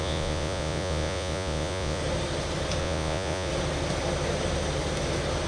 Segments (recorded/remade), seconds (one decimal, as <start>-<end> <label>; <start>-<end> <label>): 0.0-2.0 remade; 2.0-2.8 recorded; 2.8-3.5 remade; 3.5-5.5 recorded